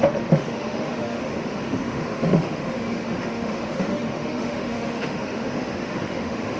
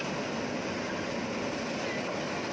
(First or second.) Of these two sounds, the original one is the second